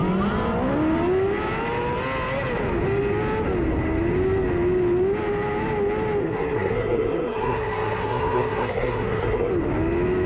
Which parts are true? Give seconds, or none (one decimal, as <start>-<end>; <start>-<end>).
0.0-6.2; 9.5-10.3

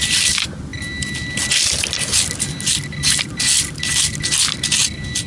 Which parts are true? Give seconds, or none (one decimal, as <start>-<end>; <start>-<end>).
0.0-5.3